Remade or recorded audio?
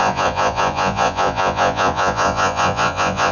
remade